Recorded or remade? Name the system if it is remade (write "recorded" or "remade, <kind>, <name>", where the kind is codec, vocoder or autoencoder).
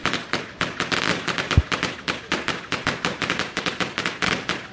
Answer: recorded